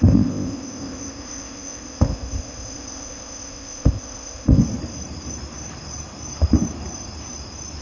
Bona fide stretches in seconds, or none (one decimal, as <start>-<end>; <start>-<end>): 4.6-7.8